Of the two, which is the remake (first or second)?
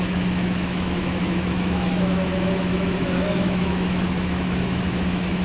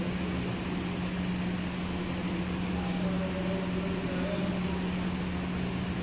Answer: first